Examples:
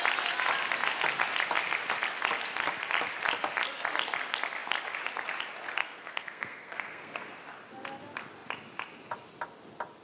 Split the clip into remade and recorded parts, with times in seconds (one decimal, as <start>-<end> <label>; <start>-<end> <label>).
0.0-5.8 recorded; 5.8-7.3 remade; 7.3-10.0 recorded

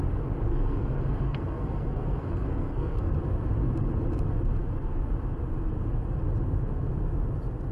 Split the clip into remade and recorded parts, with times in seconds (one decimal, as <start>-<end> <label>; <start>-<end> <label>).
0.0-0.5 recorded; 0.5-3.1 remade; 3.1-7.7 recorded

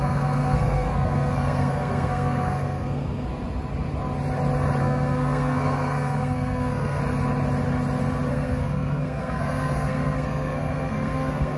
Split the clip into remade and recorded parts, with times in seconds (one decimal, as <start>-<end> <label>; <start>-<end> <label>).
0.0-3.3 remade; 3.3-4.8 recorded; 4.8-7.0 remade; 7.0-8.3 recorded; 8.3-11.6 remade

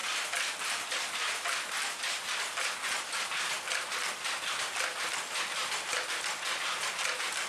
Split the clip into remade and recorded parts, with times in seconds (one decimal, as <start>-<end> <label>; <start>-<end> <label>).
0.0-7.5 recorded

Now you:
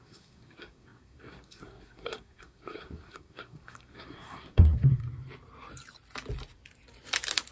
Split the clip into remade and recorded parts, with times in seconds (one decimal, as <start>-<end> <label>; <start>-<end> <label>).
0.0-5.0 remade; 5.0-7.5 recorded